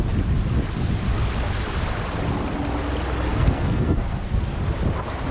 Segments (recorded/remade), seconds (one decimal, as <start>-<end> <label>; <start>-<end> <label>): 0.0-3.3 recorded; 3.3-4.4 remade; 4.4-5.3 recorded